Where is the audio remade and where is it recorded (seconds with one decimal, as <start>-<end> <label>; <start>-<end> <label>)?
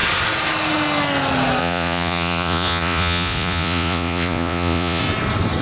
0.0-1.6 recorded; 1.6-5.0 remade; 5.0-5.6 recorded